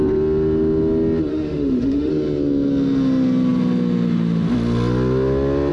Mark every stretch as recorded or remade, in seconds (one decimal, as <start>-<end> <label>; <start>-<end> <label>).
0.0-1.3 recorded; 1.3-2.1 remade; 2.1-5.7 recorded